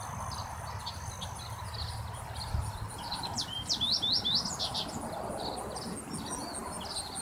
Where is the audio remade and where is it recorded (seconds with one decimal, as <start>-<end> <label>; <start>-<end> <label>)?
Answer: 0.0-7.2 recorded